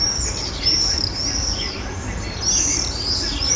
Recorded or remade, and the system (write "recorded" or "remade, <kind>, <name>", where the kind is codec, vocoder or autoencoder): recorded